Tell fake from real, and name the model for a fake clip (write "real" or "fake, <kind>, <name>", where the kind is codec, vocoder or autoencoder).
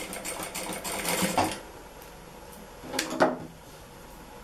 real